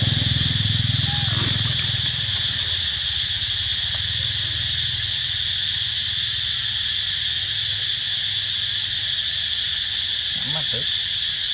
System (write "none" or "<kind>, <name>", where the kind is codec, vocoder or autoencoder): none